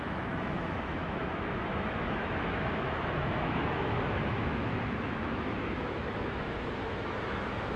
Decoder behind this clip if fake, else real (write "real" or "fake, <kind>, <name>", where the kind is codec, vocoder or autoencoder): fake, autoencoder, DAC-VAE